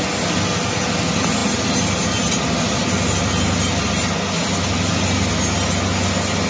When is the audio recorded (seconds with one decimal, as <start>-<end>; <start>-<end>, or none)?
0.0-6.5